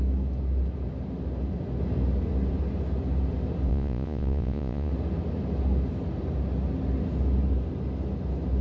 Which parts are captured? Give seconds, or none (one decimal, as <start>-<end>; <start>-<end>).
0.0-3.7; 4.9-8.6

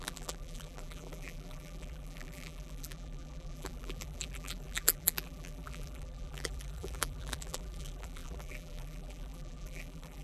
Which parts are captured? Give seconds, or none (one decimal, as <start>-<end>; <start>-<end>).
none